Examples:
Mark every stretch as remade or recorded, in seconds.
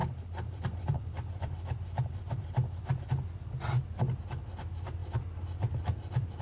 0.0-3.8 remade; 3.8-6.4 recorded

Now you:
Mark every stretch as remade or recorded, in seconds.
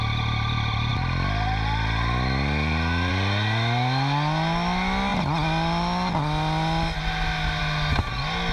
0.0-8.5 recorded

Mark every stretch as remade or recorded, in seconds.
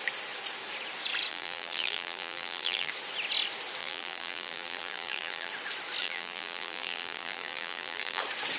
0.0-1.3 recorded; 1.3-2.9 remade; 2.9-3.8 recorded; 3.8-5.5 remade; 5.5-6.0 recorded; 6.0-8.2 remade; 8.2-8.6 recorded